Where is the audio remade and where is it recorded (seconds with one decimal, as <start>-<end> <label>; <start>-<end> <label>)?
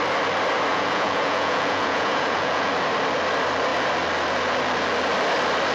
0.0-0.7 recorded; 0.7-2.7 remade; 2.7-5.7 recorded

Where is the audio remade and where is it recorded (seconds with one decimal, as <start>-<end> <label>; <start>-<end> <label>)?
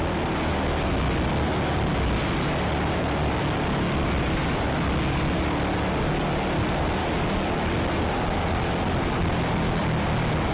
0.0-10.5 recorded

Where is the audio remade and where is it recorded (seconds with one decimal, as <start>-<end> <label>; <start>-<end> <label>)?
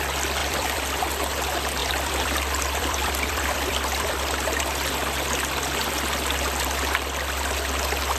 0.0-0.4 recorded; 0.4-1.0 remade; 1.0-1.8 recorded; 1.8-4.6 remade; 4.6-8.2 recorded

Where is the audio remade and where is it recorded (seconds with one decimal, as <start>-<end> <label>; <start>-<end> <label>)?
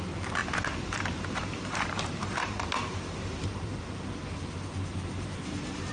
0.0-0.4 recorded; 0.4-3.9 remade; 3.9-4.9 recorded; 4.9-5.9 remade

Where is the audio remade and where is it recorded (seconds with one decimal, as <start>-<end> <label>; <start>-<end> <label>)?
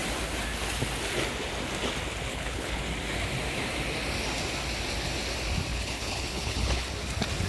0.0-2.3 recorded; 2.3-2.8 remade; 2.8-5.7 recorded; 5.7-6.9 remade; 6.9-7.5 recorded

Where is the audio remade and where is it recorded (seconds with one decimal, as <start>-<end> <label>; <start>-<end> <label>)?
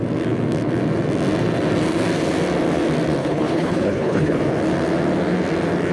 0.0-3.2 recorded; 3.2-4.4 remade; 4.4-5.9 recorded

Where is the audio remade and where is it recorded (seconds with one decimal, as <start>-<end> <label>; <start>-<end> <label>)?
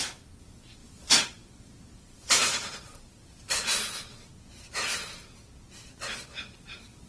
0.0-0.8 recorded; 0.8-4.3 remade; 4.3-7.1 recorded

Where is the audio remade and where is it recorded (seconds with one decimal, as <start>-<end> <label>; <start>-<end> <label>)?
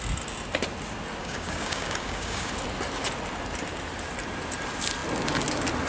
0.0-1.2 recorded; 1.2-2.5 remade; 2.5-5.9 recorded